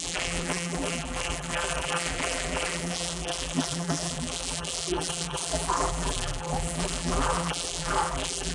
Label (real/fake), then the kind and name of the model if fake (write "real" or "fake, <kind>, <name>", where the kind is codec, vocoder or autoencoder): fake, vocoder, BigVGAN v2